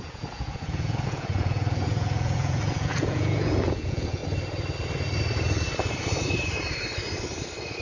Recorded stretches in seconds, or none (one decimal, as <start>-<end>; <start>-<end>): 4.2-7.8